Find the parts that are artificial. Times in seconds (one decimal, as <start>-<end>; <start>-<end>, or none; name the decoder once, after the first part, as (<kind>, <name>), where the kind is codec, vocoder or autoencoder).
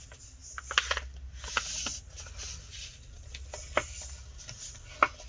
none